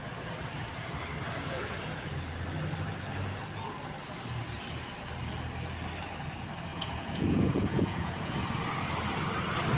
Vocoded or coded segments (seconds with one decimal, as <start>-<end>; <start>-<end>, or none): 6.7-8.4